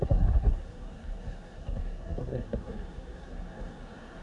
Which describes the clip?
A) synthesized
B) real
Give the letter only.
A